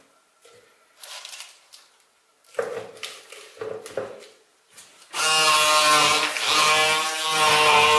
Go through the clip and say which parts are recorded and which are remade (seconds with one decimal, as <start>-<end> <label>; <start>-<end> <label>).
0.0-4.5 recorded; 4.5-5.2 remade; 5.2-8.0 recorded

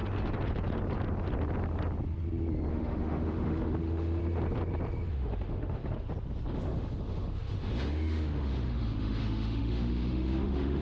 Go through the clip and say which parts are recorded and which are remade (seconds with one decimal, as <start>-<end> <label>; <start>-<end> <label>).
0.0-2.7 recorded; 2.7-4.2 remade; 4.2-5.1 recorded; 5.1-5.8 remade; 5.8-6.5 recorded; 6.5-10.8 remade